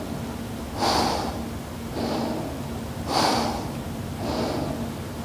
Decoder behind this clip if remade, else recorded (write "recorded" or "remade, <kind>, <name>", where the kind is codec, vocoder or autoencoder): recorded